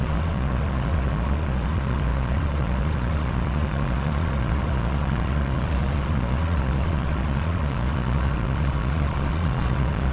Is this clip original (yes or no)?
no